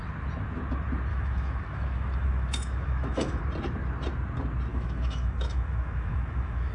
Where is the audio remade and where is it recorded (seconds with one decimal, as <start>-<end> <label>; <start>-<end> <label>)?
0.0-1.1 recorded; 1.1-3.4 remade; 3.4-4.7 recorded; 4.7-6.7 remade